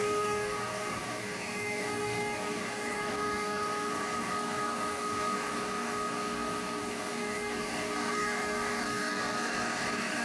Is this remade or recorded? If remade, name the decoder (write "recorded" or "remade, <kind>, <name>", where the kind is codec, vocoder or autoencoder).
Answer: remade, codec, DAC